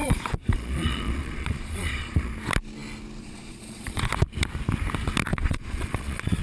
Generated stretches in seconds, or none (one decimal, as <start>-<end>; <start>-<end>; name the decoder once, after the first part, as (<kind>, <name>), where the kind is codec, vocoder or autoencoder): 0.0-2.3 (vocoder, Vocos); 3.2-4.1; 5.3-6.4